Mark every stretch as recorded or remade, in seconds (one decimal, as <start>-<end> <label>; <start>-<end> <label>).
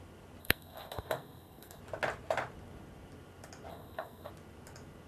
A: 0.0-0.4 recorded; 0.4-1.8 remade; 1.8-3.7 recorded; 3.7-4.3 remade; 4.3-5.1 recorded